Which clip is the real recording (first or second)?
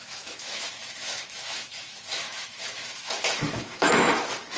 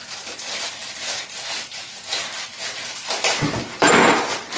second